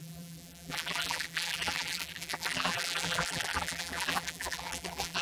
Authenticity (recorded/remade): remade